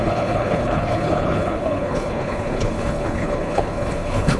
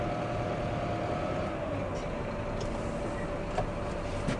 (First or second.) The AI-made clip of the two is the first